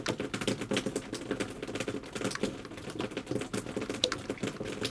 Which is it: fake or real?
real